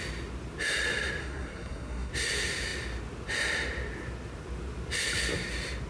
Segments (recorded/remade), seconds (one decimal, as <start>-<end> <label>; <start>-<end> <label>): 0.0-1.2 recorded; 1.2-2.1 remade; 2.1-5.9 recorded